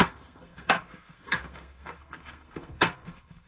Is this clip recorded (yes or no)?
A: no